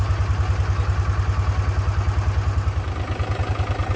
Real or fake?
real